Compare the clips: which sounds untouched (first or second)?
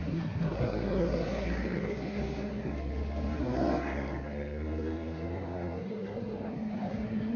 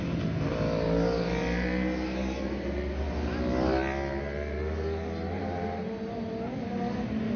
second